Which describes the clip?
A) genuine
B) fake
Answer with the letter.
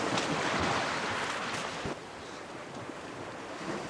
A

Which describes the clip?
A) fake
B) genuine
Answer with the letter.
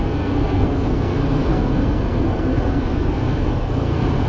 A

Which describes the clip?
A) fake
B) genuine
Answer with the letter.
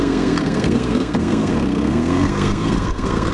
A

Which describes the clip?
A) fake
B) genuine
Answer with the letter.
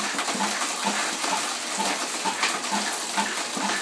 B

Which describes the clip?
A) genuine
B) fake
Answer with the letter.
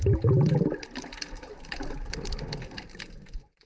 A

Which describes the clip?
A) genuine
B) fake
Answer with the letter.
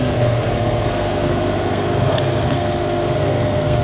B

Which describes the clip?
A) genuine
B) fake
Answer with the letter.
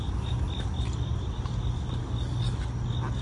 A